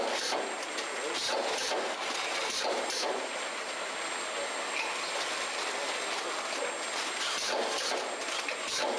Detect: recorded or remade recorded